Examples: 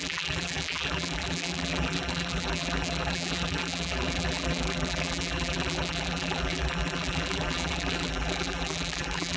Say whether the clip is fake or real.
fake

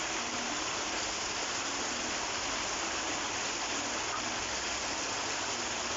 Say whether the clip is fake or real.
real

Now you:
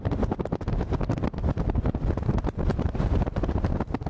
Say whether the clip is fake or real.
fake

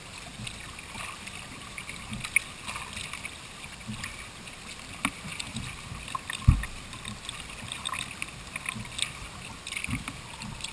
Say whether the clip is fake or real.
real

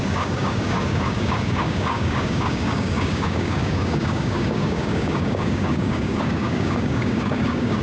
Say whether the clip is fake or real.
fake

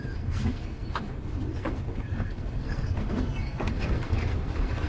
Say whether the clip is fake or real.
fake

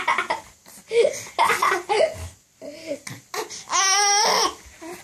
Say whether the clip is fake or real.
real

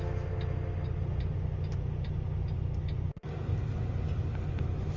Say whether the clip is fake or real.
real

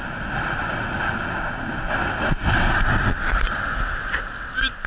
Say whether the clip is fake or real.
real